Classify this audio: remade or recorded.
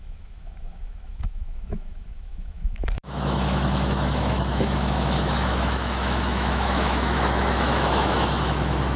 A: remade